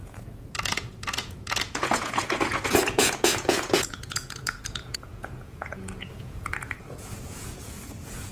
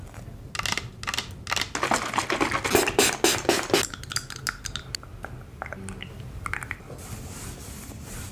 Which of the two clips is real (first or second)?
second